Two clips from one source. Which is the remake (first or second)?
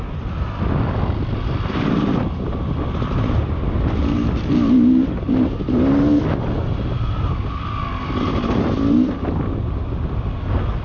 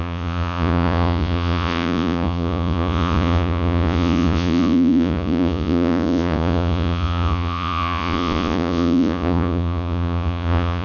second